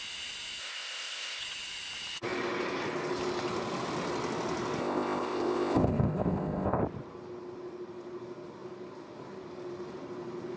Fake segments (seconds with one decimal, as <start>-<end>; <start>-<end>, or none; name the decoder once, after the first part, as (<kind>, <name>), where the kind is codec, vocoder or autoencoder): 0.6-1.4 (codec, ZipCodec); 4.8-6.8